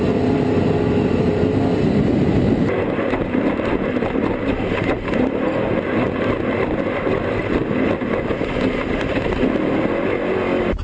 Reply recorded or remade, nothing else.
recorded